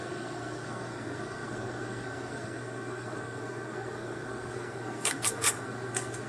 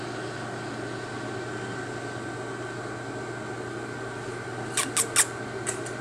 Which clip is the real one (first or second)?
second